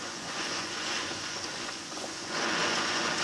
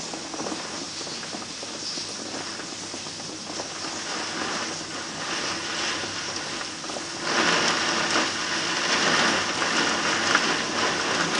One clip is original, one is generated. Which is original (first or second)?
second